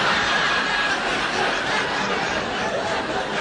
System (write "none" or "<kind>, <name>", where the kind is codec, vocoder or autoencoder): none